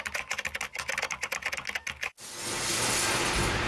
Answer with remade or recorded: recorded